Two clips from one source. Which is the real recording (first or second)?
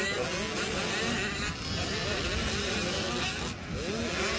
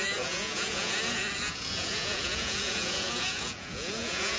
first